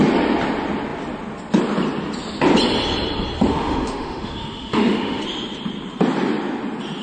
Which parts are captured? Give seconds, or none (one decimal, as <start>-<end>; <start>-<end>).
0.0-3.5; 5.2-7.0